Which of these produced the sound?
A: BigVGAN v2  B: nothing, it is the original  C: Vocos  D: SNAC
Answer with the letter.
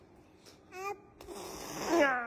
B